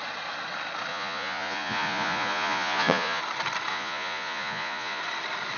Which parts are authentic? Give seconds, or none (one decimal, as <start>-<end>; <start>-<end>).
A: 0.0-0.9; 3.2-3.7; 5.0-5.6